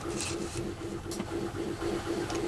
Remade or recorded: recorded